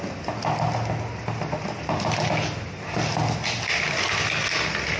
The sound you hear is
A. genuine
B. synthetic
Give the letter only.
A